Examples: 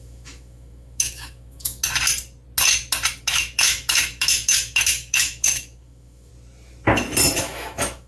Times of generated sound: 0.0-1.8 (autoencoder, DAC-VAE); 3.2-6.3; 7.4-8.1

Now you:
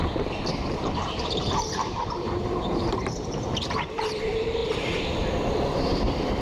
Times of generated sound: 0.0-4.6 (vocoder, BigVGAN v2); 5.9-6.4

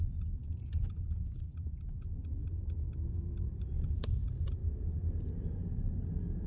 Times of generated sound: none

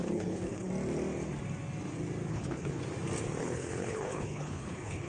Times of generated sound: 0.0-0.7 (codec, HILCodec); 2.3-2.8; 3.4-5.1

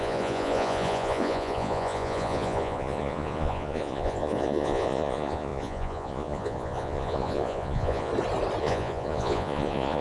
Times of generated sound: 0.0-8.1 (vocoder, Vocos); 8.6-10.0

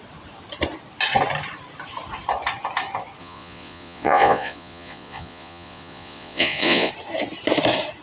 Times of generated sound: 3.2-6.9 (vocoder, Vocos)

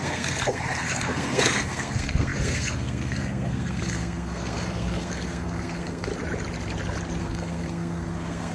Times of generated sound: 0.0-6.1 (codec, SNAC); 7.2-8.5

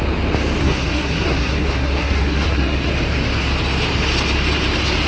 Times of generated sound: 0.6-2.9 (codec, SNAC)